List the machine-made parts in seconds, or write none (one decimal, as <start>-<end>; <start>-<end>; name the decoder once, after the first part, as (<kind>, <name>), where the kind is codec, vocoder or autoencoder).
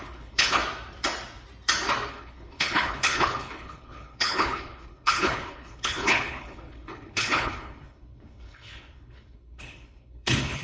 0.0-0.6 (codec, HILCodec); 2.1-10.6